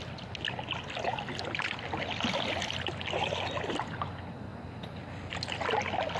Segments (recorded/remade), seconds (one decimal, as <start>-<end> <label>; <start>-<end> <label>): 0.0-6.2 recorded

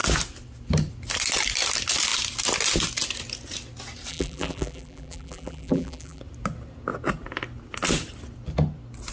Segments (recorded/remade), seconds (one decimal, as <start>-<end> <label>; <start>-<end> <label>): 0.0-4.1 recorded; 4.1-6.2 remade; 6.2-9.1 recorded

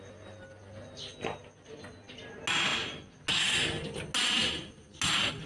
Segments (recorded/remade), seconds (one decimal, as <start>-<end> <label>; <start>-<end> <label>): 0.0-5.5 recorded

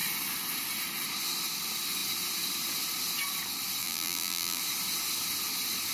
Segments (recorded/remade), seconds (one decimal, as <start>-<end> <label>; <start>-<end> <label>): 0.0-3.8 recorded; 3.8-4.6 remade; 4.6-5.9 recorded